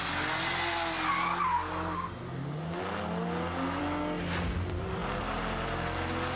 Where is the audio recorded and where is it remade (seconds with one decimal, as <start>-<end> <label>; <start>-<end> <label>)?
0.0-6.4 recorded